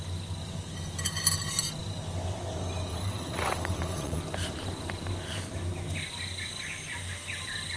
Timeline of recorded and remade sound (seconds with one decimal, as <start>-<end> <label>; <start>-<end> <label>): 0.0-2.9 recorded; 2.9-4.2 remade; 4.2-7.8 recorded